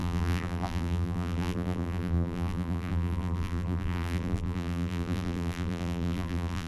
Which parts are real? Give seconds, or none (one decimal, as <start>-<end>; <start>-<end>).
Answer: none